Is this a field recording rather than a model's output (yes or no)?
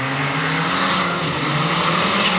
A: yes